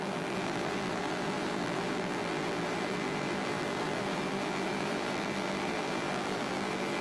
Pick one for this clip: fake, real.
fake